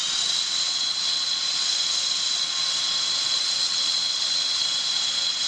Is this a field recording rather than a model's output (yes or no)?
no